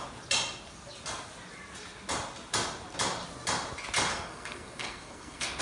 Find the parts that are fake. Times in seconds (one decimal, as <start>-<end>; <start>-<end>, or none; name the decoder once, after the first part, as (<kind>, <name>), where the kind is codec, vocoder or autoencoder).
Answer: 4.1-5.6 (codec, SNAC)